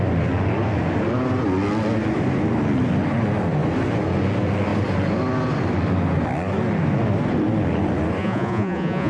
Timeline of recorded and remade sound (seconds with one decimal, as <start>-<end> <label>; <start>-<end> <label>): 0.0-8.2 recorded; 8.2-9.1 remade